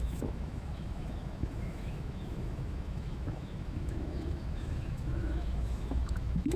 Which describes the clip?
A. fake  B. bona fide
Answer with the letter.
A